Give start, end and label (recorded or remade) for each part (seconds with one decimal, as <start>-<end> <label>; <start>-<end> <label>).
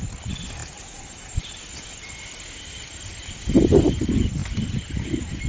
0.0-0.6 recorded; 0.6-1.6 remade; 1.6-5.5 recorded